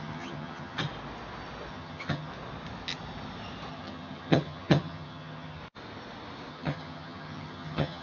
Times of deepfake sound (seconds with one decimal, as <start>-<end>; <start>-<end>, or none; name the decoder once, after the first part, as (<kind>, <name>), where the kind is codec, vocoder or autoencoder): 0.0-0.8 (vocoder, HiFi-GAN); 1.7-2.3; 3.7-5.6; 6.5-8.0